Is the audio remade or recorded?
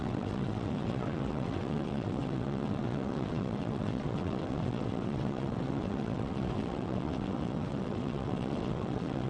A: remade